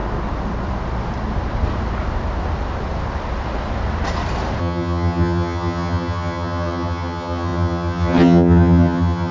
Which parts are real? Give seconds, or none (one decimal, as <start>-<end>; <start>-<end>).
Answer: 0.0-4.6